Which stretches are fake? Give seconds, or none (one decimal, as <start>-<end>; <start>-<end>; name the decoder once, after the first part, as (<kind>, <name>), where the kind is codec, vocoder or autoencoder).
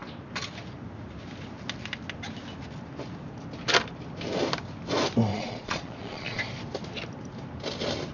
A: 5.3-6.4 (vocoder, Vocos)